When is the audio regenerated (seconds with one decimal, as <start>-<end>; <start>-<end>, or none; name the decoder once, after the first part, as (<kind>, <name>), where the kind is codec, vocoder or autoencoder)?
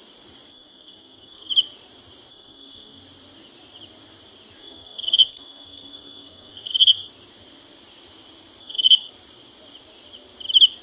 0.5-1.5 (codec, SNAC); 2.3-3.0; 4.6-7.1; 8.6-9.1